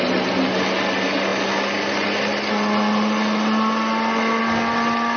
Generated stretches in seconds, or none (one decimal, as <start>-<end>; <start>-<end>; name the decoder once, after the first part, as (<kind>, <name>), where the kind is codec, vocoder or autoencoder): none